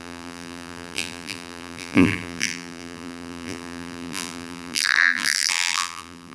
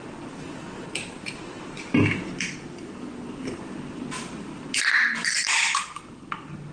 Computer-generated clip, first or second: first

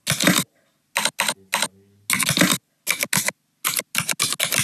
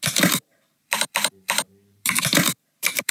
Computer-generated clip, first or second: second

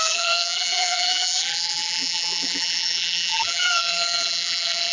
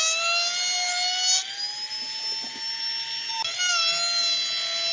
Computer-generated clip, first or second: first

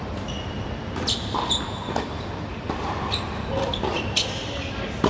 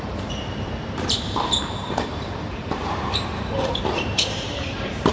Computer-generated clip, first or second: second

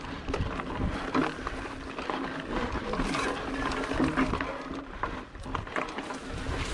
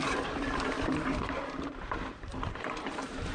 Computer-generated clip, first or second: second